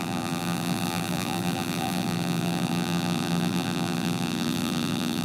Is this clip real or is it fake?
fake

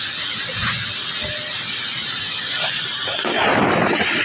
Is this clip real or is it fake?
real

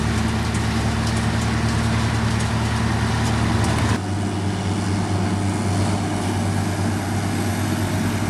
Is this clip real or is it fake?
real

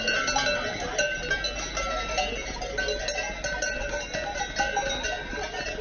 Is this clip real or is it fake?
real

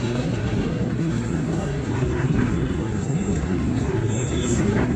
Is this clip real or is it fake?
fake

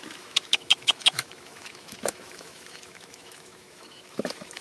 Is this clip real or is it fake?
fake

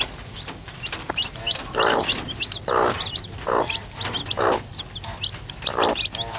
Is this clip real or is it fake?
real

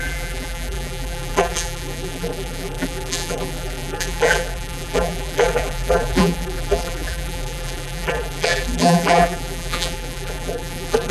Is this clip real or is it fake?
fake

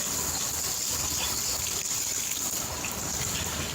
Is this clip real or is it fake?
real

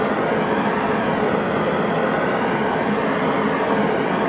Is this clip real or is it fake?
real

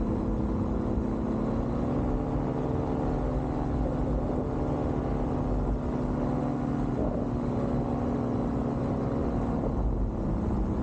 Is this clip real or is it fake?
real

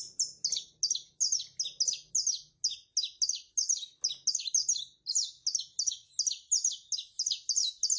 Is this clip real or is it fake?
real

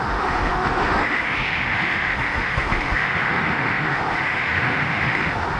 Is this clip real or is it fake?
fake